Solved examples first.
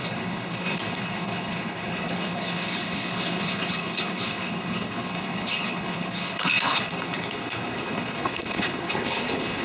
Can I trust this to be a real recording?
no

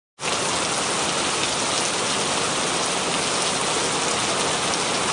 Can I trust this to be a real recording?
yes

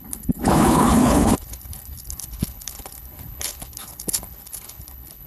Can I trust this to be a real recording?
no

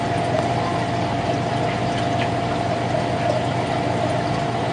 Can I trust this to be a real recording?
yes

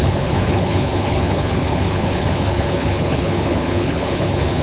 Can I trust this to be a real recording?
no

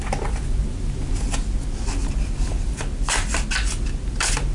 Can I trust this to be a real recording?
yes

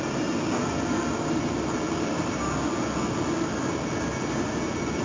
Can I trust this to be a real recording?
yes